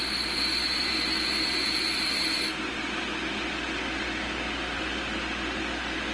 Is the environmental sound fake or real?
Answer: real